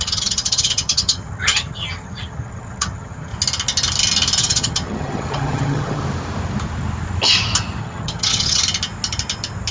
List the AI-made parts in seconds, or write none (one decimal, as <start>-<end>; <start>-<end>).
0.0-3.3; 4.4-6.0; 7.8-8.6